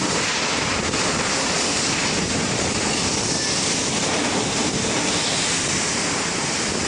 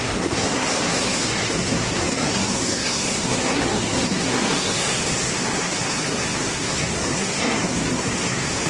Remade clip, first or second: second